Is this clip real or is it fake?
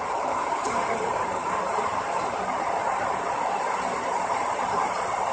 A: fake